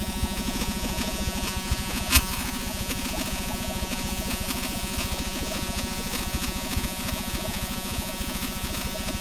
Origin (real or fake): fake